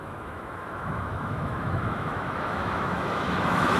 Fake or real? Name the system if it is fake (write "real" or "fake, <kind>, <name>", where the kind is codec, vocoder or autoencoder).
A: fake, autoencoder, DAC-VAE